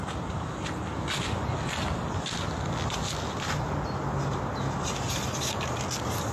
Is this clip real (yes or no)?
yes